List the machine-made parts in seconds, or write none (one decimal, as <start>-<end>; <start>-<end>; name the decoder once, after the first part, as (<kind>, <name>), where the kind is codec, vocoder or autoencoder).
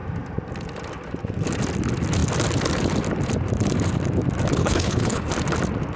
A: 4.6-5.3 (codec, HILCodec)